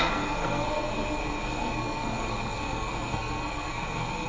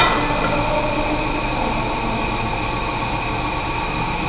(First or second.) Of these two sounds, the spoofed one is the first